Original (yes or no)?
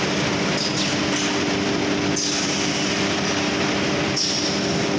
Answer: yes